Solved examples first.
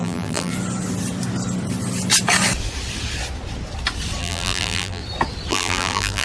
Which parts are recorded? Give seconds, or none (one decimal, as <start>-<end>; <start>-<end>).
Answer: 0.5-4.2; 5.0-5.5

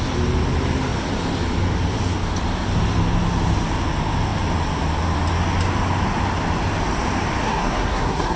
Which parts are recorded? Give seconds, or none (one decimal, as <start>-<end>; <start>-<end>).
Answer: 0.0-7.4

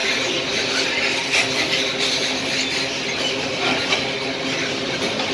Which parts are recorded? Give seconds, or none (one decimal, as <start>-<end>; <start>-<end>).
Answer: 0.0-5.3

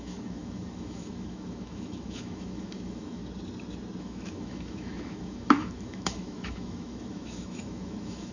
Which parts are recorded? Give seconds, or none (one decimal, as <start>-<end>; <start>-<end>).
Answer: 3.2-4.0